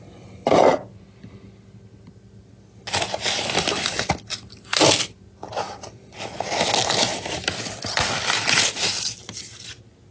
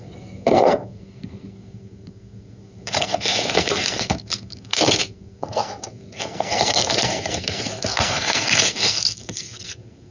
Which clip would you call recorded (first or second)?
first